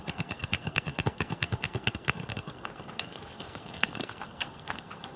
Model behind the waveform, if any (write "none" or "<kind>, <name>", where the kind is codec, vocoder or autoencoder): codec, SNAC